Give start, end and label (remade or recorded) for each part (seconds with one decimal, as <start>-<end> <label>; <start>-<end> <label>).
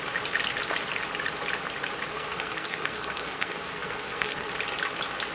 0.0-2.1 recorded; 2.1-4.5 remade; 4.5-5.3 recorded